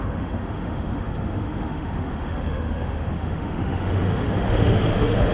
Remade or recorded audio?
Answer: remade